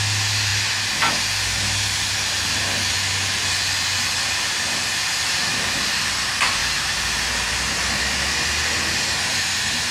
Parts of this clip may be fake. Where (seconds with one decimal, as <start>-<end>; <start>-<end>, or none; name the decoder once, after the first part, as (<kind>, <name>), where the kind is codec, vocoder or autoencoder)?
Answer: none